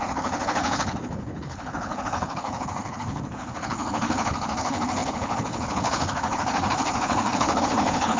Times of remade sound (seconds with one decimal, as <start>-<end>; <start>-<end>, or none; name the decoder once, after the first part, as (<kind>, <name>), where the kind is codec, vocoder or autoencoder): 0.0-8.2 (codec, HILCodec)